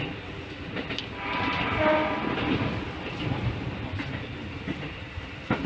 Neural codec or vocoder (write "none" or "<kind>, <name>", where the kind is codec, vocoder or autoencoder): none